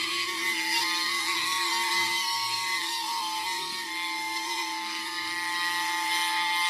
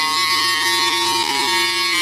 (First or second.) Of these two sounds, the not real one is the first